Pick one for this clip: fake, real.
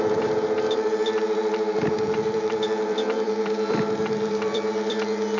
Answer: fake